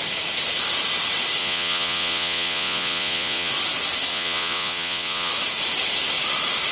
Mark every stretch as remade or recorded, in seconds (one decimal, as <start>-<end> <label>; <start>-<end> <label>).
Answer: 0.0-1.4 recorded; 1.4-3.5 remade; 3.5-4.1 recorded; 4.1-5.3 remade; 5.3-6.7 recorded